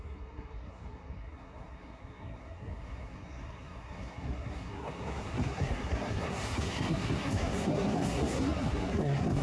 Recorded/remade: remade